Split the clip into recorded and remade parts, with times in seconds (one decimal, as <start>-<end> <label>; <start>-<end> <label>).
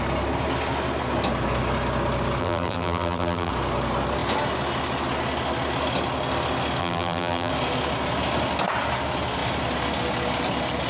0.0-2.4 recorded; 2.4-3.5 remade; 3.5-6.8 recorded; 6.8-7.5 remade; 7.5-10.9 recorded